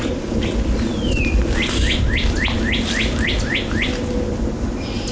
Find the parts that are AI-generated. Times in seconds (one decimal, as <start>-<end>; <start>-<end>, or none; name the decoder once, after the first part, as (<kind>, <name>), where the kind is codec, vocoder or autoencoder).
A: none